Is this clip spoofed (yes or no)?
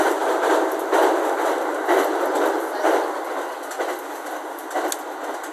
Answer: no